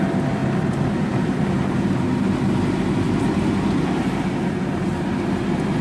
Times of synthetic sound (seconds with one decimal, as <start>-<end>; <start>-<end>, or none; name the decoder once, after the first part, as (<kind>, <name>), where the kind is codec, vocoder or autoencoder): none